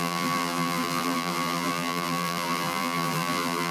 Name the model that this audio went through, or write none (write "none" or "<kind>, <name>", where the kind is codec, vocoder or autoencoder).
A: vocoder, BigVGAN v2